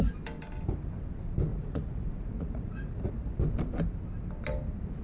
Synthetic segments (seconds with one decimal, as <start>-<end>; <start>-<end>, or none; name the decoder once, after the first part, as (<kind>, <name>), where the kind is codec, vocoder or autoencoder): 1.5-3.1 (vocoder, Vocos)